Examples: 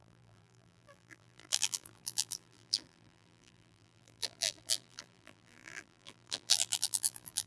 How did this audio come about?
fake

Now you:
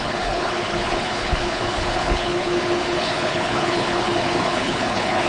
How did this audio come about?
fake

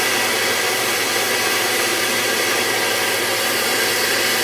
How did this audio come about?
real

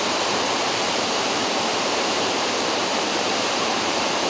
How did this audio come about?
fake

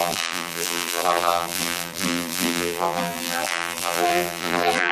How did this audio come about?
fake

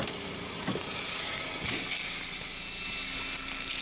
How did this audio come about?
real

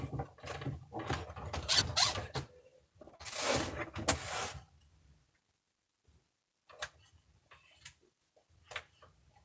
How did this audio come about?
real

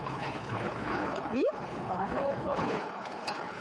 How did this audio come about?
fake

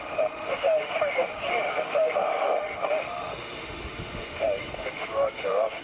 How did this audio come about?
fake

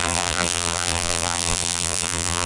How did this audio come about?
fake